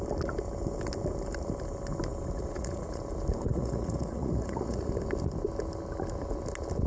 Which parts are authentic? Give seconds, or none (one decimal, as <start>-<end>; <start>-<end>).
0.0-2.4; 3.0-3.5; 4.9-6.9